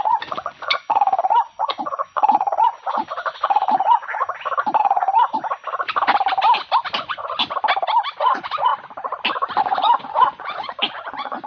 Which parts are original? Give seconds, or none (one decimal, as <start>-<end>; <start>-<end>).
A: 4.2-4.8; 5.4-7.0; 7.4-8.2; 8.7-9.6